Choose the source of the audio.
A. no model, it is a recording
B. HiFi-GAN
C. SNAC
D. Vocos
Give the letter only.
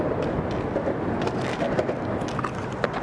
A